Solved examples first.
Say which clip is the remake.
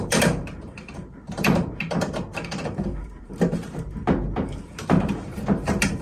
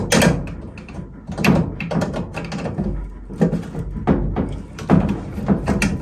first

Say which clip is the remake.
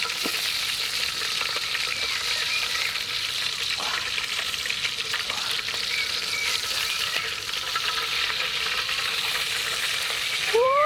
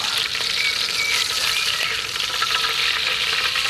first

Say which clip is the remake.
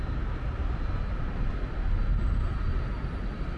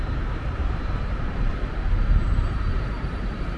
second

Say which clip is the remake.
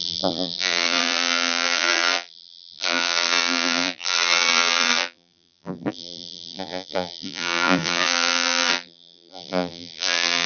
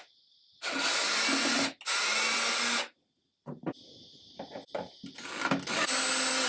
first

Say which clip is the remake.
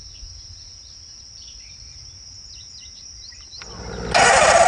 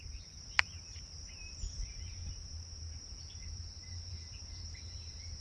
second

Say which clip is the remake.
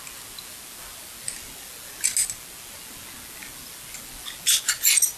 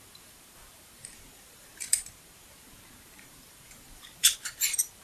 second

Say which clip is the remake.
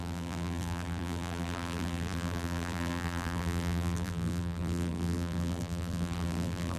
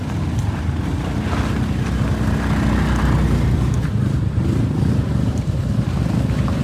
first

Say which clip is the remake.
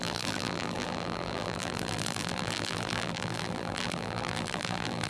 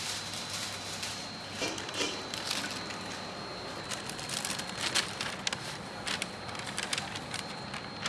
first